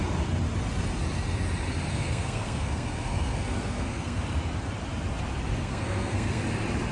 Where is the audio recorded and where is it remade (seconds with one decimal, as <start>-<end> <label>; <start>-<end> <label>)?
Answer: 0.0-1.9 recorded; 1.9-4.2 remade; 4.2-5.6 recorded; 5.6-6.4 remade; 6.4-6.9 recorded